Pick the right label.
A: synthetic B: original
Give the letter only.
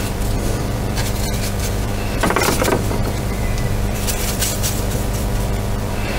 A